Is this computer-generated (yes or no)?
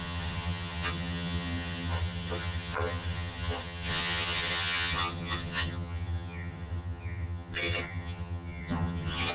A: yes